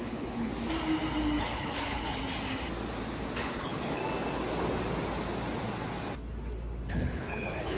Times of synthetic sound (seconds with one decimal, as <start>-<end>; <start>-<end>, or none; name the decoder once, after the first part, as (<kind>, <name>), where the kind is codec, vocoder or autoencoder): 0.0-0.5 (codec, HILCodec); 1.4-2.2; 3.4-4.0; 6.9-7.8